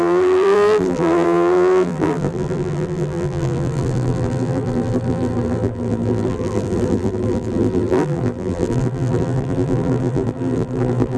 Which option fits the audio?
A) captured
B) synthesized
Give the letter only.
B